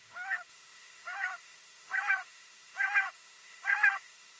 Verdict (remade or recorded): remade